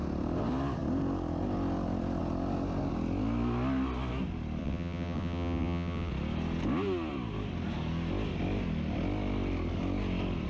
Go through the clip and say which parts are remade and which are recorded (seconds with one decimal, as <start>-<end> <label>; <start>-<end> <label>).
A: 0.0-4.6 recorded; 4.6-6.1 remade; 6.1-10.5 recorded